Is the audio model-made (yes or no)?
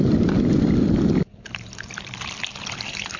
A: yes